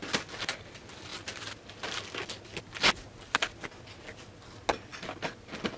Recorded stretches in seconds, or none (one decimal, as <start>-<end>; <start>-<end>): 0.0-5.8